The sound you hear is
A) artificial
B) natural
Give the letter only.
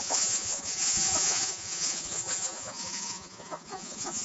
A